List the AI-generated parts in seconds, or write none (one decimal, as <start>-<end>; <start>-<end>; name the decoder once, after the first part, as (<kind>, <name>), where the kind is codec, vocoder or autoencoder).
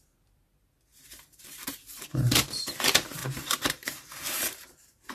0.9-2.5 (vocoder, BigVGAN v2); 3.2-5.1